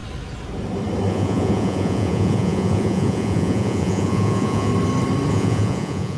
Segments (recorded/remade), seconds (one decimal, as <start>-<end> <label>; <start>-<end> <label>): 0.0-1.1 recorded; 1.1-4.7 remade; 4.7-5.3 recorded; 5.3-6.2 remade